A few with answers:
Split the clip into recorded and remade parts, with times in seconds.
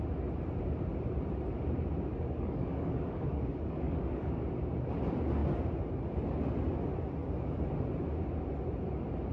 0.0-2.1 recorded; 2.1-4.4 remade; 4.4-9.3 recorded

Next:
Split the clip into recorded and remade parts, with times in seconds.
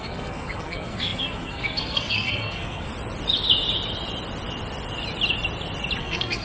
0.0-2.9 remade; 2.9-6.0 recorded; 6.0-6.4 remade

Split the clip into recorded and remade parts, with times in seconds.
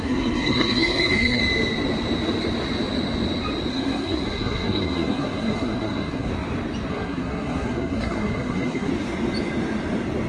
0.0-1.4 remade; 1.4-3.7 recorded; 3.7-6.3 remade; 6.3-6.9 recorded; 6.9-8.9 remade; 8.9-10.3 recorded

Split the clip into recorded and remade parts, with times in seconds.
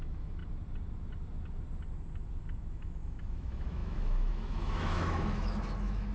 0.0-0.4 remade; 0.4-2.4 recorded; 2.4-6.1 remade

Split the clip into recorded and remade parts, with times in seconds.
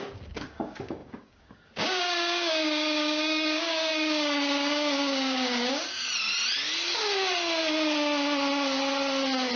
0.0-6.1 remade; 6.1-9.6 recorded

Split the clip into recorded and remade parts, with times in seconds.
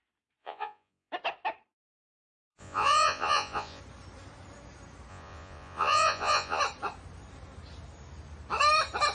0.0-0.4 recorded; 0.4-1.1 remade; 1.1-2.5 recorded; 2.5-3.8 remade; 3.8-5.1 recorded; 5.1-6.6 remade; 6.6-9.1 recorded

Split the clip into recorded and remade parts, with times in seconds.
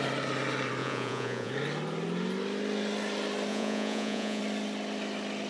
0.0-0.8 recorded; 0.8-1.5 remade; 1.5-3.5 recorded; 3.5-4.4 remade; 4.4-5.5 recorded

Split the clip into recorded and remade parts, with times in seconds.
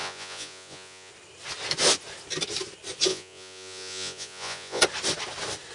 0.0-1.1 remade; 1.1-3.1 recorded; 3.1-4.8 remade; 4.8-5.7 recorded